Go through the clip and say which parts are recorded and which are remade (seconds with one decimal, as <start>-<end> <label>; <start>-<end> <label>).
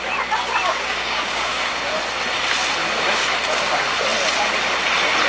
0.0-0.7 recorded; 0.7-1.7 remade; 1.7-5.3 recorded